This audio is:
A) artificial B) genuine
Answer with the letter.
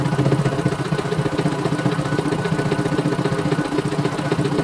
B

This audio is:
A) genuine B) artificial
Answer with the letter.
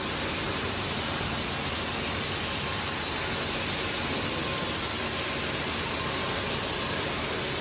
A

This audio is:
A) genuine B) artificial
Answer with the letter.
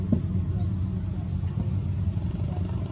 A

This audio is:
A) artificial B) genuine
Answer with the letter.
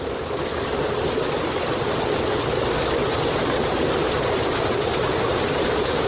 B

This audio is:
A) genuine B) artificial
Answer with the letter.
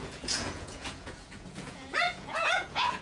B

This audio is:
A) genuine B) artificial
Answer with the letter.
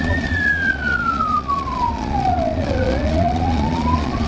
B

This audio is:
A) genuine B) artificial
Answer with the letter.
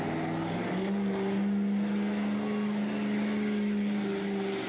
A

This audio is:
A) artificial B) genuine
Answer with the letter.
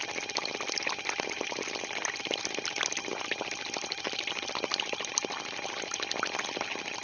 B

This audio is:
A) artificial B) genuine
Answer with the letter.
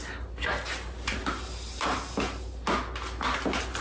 B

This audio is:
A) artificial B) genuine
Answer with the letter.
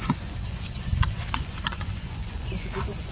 A